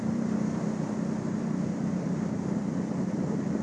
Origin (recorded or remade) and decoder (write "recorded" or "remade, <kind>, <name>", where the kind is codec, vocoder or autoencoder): remade, vocoder, BigVGAN v2